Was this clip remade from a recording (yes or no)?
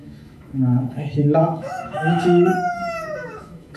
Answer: yes